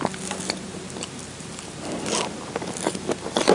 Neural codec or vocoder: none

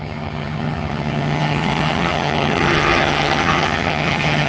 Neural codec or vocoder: vocoder, HiFi-GAN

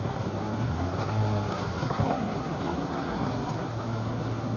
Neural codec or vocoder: codec, SNAC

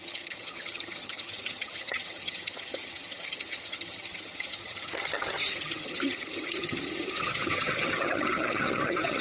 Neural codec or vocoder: vocoder, HiFi-GAN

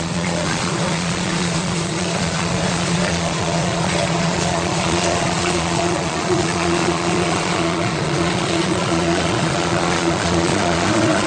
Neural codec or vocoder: vocoder, Vocos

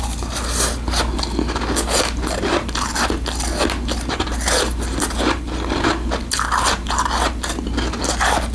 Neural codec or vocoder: none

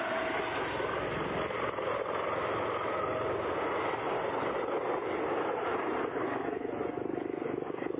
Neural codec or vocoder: none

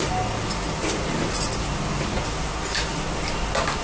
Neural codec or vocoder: none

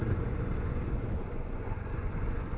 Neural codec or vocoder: vocoder, Vocos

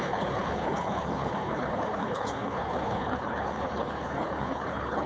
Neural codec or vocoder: codec, HILCodec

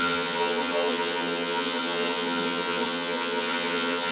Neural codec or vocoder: vocoder, HiFi-GAN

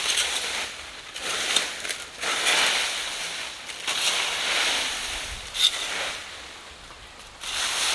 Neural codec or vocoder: none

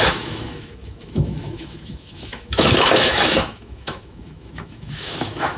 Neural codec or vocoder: autoencoder, DAC-VAE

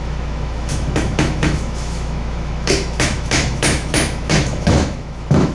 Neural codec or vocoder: autoencoder, DAC-VAE